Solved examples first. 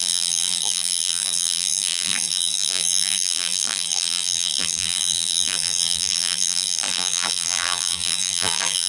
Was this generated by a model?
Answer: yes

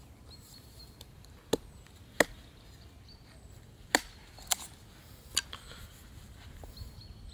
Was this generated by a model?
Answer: no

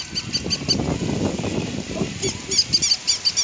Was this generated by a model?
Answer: no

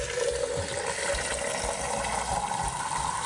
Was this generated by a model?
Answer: no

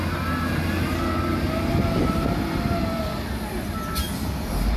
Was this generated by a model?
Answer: no